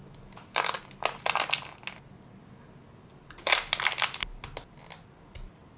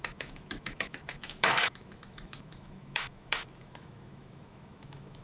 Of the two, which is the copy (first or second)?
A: second